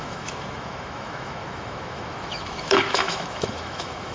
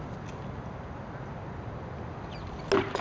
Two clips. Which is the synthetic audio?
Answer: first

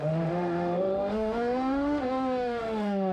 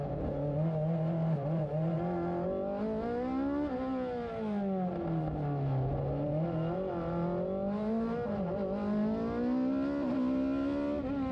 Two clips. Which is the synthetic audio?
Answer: first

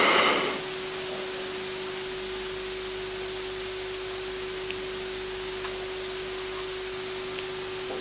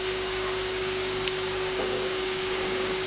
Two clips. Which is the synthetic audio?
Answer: second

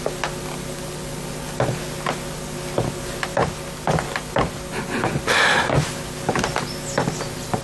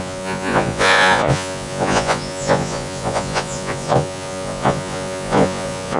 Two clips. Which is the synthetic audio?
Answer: second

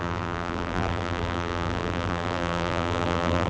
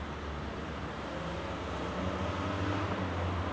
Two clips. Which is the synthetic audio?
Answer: first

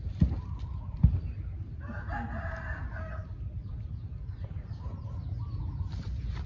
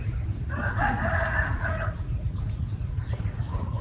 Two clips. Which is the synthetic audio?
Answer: second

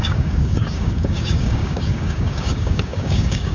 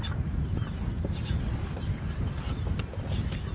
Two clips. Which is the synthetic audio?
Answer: first